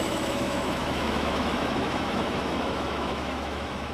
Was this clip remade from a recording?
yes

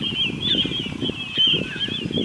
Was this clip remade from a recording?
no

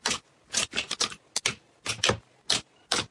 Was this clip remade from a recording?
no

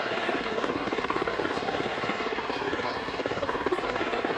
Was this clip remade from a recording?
yes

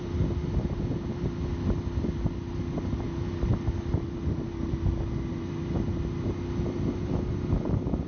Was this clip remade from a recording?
no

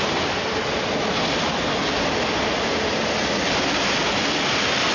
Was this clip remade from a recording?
no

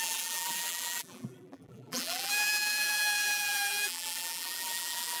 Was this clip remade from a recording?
yes